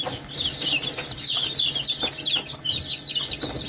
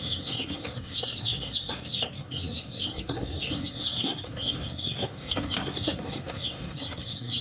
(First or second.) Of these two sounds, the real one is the first